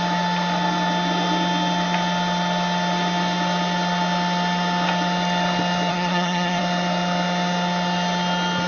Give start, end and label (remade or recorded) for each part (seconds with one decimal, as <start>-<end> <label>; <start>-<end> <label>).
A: 0.0-5.9 recorded; 5.9-6.6 remade; 6.6-8.7 recorded